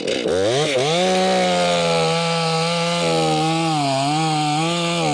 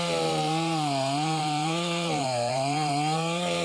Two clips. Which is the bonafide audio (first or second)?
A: first